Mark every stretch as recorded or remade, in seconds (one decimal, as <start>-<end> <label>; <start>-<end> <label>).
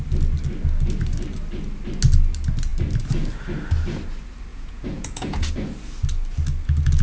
0.0-4.5 recorded; 4.5-5.5 remade; 5.5-7.0 recorded